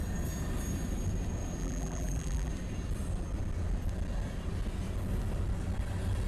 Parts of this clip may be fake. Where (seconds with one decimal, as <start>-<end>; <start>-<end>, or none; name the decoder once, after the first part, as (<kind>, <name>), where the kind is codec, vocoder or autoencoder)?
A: 1.6-2.5 (vocoder, BigVGAN v2)